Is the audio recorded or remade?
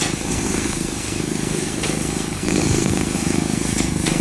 remade